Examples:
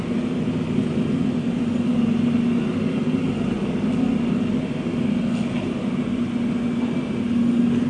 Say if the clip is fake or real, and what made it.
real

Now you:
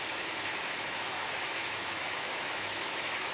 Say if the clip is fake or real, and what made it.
fake, autoencoder, DAC-VAE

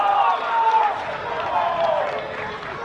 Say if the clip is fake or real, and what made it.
real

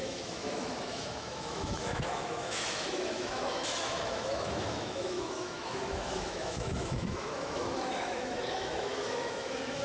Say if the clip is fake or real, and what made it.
fake, autoencoder, DAC-VAE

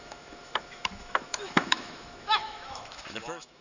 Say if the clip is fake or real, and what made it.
fake, autoencoder, DAC-VAE